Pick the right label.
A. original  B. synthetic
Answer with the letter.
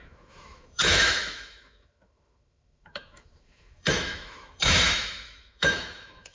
B